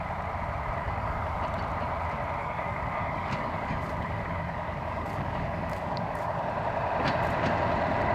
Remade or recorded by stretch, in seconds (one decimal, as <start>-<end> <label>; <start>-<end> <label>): 0.0-0.8 recorded; 0.8-1.4 remade; 1.4-2.4 recorded; 2.4-6.4 remade; 6.4-8.1 recorded